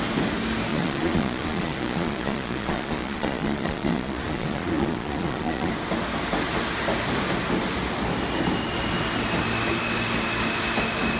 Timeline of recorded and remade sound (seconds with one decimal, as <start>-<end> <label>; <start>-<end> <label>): 0.0-0.7 recorded; 0.7-5.7 remade; 5.7-11.2 recorded